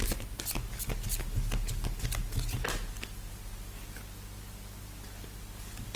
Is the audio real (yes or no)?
yes